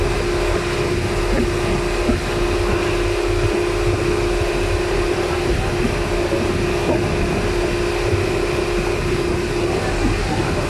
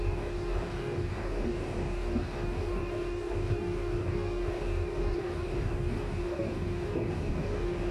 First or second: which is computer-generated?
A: second